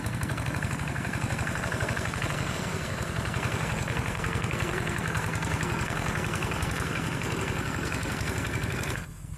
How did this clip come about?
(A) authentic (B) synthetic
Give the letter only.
B